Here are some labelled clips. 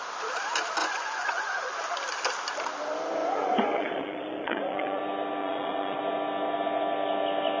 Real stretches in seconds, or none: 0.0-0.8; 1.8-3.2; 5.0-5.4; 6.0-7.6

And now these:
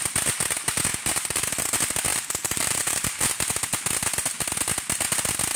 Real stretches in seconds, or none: 0.0-0.9; 1.4-2.1; 3.2-5.6

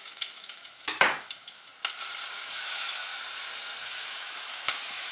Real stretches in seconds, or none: 1.7-2.5; 3.1-3.8

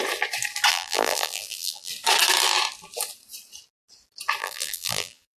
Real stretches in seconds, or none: 0.0-0.7; 1.9-4.4

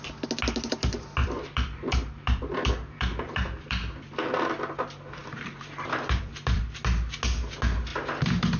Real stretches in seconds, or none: 0.0-1.2; 4.2-5.2; 6.6-8.6

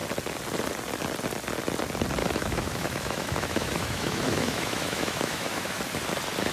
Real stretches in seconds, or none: 0.0-2.2; 5.8-6.5

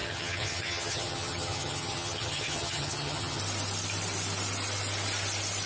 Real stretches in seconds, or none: 3.4-5.7